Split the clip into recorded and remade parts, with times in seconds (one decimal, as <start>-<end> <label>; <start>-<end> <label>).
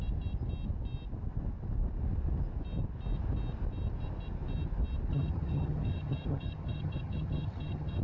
0.0-5.1 recorded; 5.1-8.0 remade